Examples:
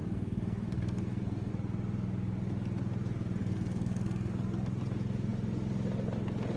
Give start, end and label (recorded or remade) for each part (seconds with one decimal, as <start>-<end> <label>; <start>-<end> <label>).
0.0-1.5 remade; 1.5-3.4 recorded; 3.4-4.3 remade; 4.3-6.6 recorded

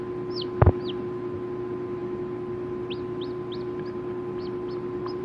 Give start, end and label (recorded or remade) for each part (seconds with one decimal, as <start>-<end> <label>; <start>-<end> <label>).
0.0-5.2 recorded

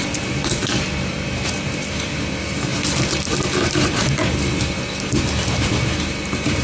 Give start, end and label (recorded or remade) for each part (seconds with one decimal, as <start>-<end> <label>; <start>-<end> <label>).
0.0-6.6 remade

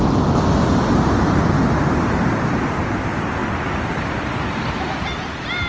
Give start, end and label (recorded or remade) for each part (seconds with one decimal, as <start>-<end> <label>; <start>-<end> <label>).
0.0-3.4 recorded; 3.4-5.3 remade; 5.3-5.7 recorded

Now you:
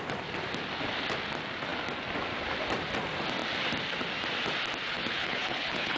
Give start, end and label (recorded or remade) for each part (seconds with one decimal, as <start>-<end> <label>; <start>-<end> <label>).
0.0-4.9 recorded; 4.9-6.0 remade

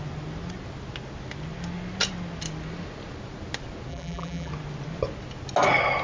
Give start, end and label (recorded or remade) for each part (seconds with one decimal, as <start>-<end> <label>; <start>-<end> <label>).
0.0-3.9 recorded; 3.9-4.5 remade; 4.5-6.0 recorded

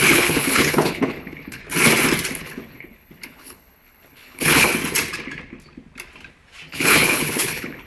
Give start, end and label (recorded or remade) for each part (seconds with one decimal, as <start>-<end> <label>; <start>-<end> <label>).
0.0-1.6 remade; 1.6-2.4 recorded; 2.4-4.7 remade; 4.7-6.7 recorded; 6.7-7.9 remade